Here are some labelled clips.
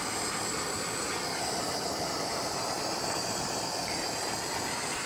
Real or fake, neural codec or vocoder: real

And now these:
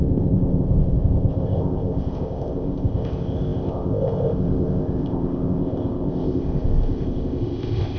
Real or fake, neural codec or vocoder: fake, codec, ZipCodec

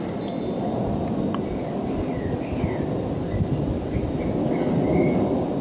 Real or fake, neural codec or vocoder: real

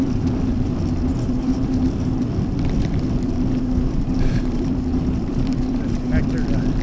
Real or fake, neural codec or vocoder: fake, vocoder, BigVGAN v2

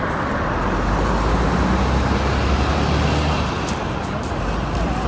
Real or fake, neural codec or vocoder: real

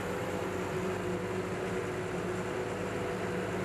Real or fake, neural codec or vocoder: real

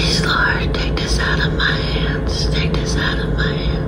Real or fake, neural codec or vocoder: real